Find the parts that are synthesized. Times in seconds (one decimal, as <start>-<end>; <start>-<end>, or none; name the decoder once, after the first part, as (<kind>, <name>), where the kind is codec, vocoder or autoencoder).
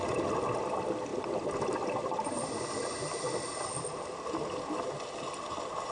none